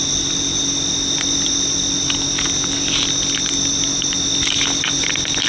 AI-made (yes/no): no